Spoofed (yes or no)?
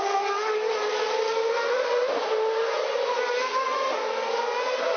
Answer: no